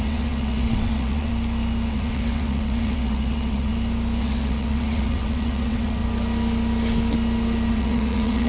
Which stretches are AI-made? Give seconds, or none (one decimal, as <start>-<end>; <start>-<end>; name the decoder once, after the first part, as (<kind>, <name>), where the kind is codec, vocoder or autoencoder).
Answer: 0.0-1.3 (vocoder, WaveNeXt); 1.9-3.7; 4.2-6.0; 7.7-8.5